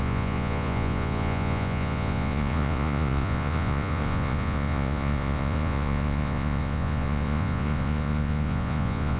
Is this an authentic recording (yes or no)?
no